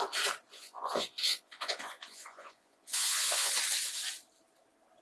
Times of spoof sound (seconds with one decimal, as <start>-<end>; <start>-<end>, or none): 0.5-3.5